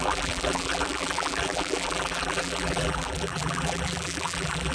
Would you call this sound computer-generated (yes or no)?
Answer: yes